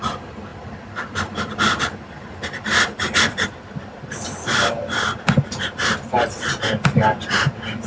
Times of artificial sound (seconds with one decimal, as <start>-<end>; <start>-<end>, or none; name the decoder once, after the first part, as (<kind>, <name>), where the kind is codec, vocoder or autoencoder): 0.5-5.2 (vocoder, BigVGAN v2)